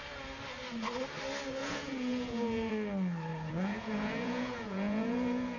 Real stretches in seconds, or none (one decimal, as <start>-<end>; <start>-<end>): 0.0-1.6; 2.7-3.3